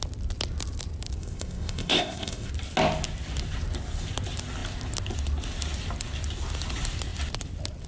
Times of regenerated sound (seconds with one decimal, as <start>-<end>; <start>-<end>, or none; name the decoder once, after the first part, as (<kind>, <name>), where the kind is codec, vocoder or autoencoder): 1.2-2.5 (codec, ZipCodec)